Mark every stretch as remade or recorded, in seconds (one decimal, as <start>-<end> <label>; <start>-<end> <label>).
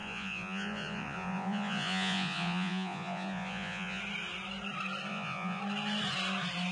0.0-4.0 remade; 4.0-5.1 recorded; 5.1-5.6 remade; 5.6-6.7 recorded